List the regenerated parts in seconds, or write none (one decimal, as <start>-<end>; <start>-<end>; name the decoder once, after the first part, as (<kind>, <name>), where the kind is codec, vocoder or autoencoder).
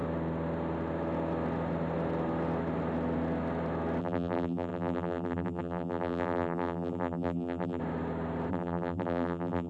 4.0-7.8 (vocoder, BigVGAN v2); 8.5-9.7